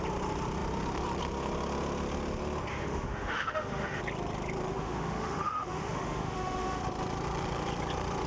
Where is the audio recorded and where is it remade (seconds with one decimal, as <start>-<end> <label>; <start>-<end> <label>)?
0.0-2.7 recorded; 2.7-4.0 remade; 4.0-4.7 recorded; 4.7-6.8 remade; 6.8-8.3 recorded